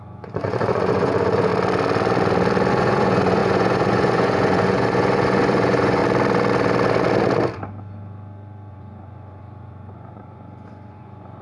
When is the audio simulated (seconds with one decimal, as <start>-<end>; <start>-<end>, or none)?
0.0-1.5; 2.7-6.0; 8.7-11.4